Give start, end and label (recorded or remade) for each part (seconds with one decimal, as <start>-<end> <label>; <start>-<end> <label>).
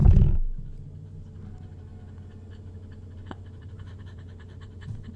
0.0-0.7 recorded; 0.7-1.9 remade; 1.9-3.6 recorded; 3.6-5.2 remade